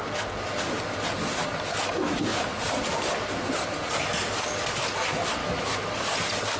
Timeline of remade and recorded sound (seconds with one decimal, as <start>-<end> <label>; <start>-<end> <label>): 0.0-5.4 recorded; 5.4-5.9 remade; 5.9-6.6 recorded